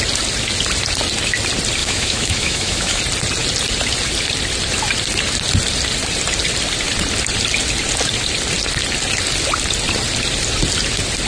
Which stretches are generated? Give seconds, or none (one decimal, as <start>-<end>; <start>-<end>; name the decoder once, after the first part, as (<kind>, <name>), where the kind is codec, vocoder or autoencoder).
1.8-3.0 (autoencoder, DAC-VAE)